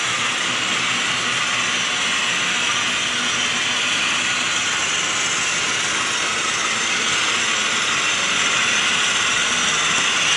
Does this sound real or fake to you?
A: real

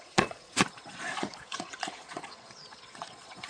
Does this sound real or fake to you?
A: fake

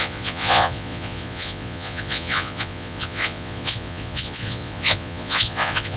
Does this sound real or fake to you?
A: fake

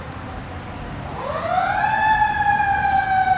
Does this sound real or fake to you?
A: real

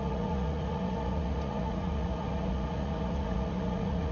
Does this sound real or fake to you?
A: fake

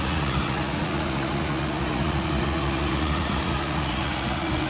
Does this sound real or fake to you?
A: fake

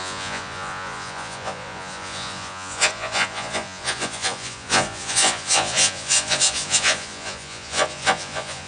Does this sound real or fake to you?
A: fake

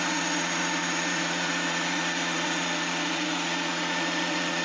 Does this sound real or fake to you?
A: fake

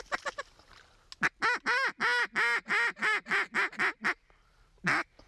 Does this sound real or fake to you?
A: real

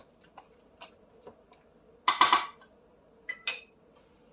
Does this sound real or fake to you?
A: real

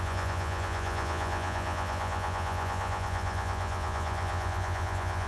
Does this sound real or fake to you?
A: fake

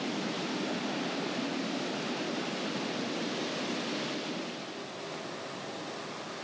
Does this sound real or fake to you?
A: real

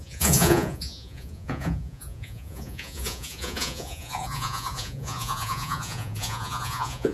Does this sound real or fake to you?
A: fake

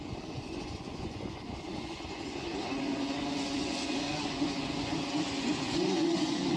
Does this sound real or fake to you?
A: fake